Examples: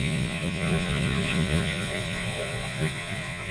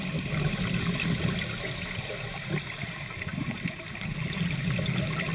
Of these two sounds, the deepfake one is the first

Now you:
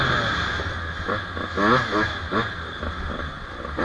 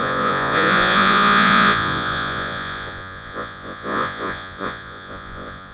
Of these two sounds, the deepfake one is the second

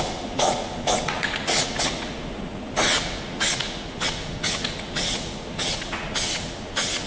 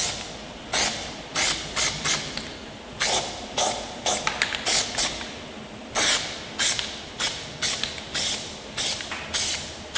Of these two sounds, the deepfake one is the first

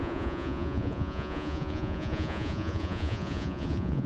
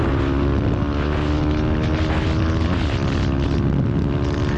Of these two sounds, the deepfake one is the first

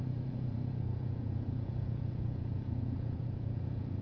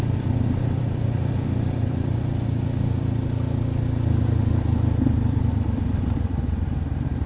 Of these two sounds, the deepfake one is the first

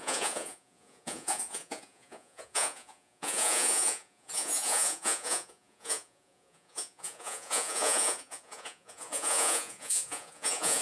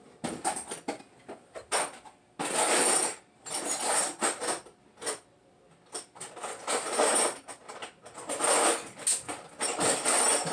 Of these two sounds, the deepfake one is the first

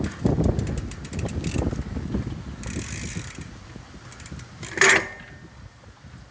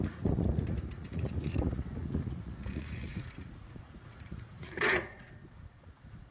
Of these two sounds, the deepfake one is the second